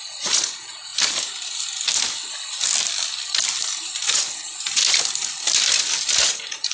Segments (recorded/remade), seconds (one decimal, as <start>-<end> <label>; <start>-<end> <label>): 0.0-0.9 remade; 0.9-4.1 recorded; 4.1-4.8 remade; 4.8-6.3 recorded; 6.3-6.7 remade